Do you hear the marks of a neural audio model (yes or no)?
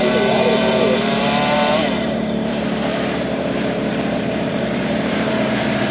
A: yes